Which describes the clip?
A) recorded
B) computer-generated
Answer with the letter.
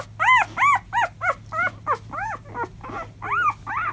A